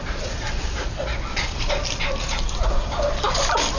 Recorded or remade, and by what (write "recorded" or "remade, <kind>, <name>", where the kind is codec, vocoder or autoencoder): recorded